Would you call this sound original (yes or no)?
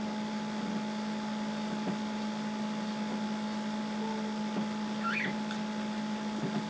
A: yes